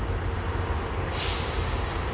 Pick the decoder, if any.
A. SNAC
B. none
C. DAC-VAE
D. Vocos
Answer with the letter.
B